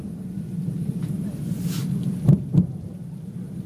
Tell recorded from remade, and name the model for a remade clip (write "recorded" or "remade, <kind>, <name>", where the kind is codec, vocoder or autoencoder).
remade, vocoder, BigVGAN v2